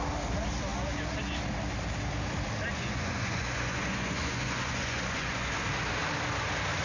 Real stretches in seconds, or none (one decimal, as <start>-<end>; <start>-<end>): 0.0-2.7; 5.5-6.8